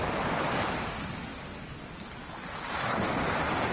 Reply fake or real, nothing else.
real